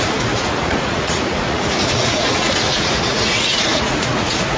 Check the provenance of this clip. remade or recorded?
remade